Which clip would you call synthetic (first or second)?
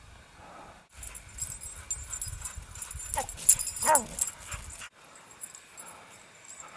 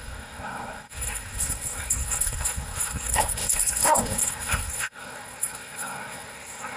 second